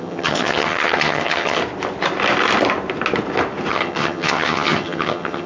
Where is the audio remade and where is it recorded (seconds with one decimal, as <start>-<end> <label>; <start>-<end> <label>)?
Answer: 0.0-1.6 remade; 1.6-3.7 recorded; 3.7-5.5 remade